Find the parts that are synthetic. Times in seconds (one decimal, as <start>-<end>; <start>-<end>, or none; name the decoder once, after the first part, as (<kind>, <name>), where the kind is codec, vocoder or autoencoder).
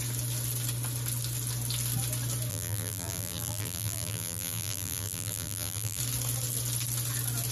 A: 2.5-6.0 (vocoder, BigVGAN v2)